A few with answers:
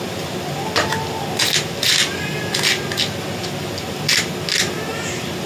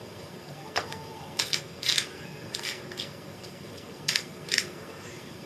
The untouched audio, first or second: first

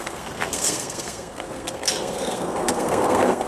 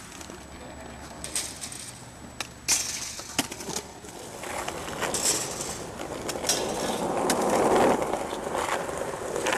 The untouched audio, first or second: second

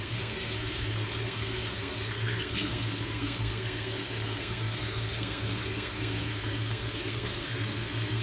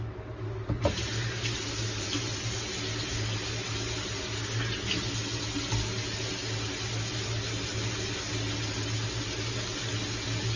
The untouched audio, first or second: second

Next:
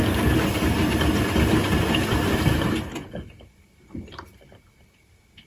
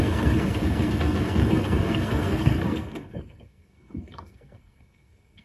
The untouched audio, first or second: first